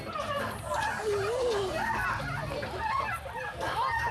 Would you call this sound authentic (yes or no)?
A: yes